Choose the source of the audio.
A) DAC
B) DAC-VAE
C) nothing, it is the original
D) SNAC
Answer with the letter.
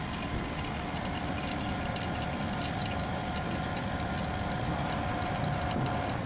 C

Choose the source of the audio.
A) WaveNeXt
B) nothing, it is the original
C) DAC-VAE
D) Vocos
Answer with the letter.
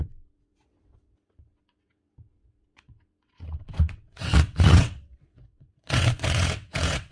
A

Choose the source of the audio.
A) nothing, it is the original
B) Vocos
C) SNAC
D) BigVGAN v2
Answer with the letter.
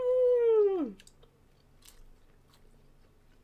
A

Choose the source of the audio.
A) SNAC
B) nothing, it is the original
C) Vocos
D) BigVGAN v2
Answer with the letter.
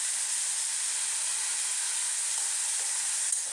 B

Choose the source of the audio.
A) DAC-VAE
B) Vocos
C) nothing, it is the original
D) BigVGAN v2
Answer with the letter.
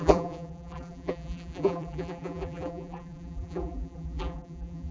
D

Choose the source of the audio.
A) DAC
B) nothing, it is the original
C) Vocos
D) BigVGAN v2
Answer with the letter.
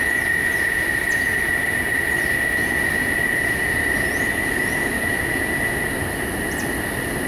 B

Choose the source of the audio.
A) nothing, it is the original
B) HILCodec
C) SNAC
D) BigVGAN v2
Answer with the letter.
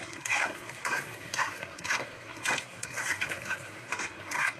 C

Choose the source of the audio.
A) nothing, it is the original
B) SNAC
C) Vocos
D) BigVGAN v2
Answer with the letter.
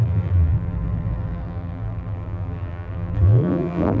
D